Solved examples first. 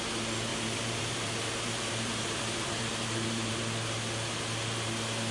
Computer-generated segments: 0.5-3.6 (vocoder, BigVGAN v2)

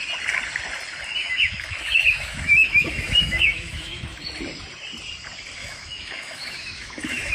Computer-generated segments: 1.2-4.2 (autoencoder, DAC-VAE); 5.6-7.3

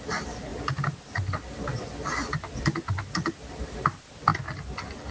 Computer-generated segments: none

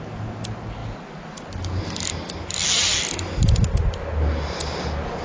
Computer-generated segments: none

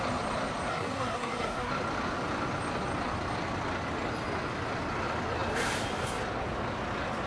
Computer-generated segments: 0.7-1.7 (codec, SNAC)

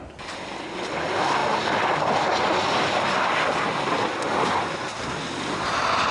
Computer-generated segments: none

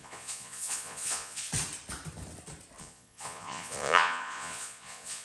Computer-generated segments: 0.0-1.5 (vocoder, Vocos); 2.8-5.2